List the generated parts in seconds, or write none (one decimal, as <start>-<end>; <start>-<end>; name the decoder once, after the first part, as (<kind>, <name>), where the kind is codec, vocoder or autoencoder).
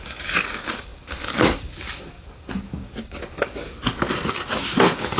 0.0-5.2 (codec, DAC)